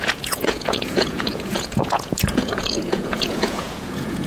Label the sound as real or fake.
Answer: fake